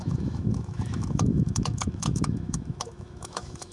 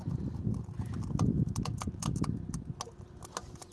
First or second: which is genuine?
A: second